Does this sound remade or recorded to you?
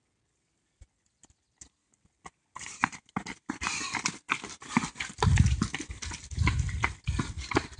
recorded